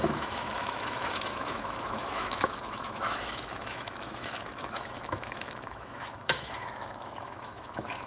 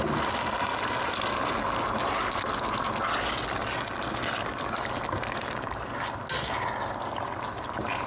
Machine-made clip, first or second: first